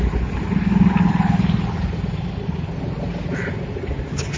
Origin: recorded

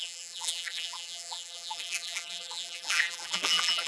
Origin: remade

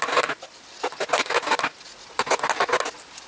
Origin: recorded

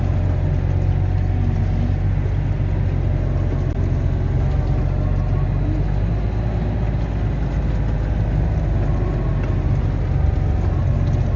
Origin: recorded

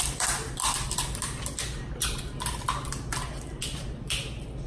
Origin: recorded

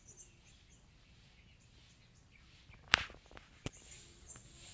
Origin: recorded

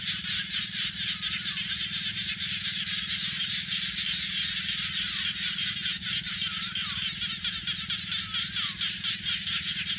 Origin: recorded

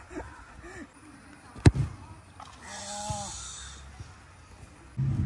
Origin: recorded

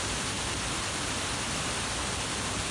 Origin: recorded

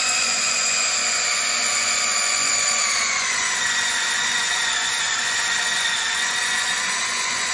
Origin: remade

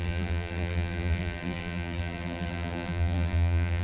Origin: remade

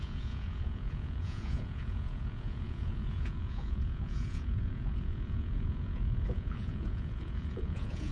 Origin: remade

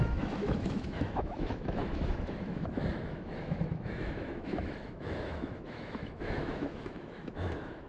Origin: remade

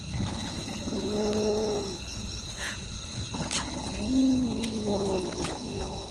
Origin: remade